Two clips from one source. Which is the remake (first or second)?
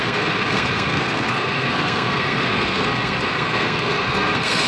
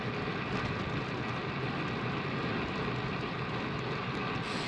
first